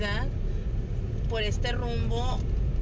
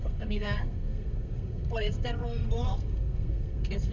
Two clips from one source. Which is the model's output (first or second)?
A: second